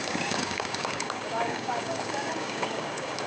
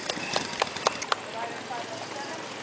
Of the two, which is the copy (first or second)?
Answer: first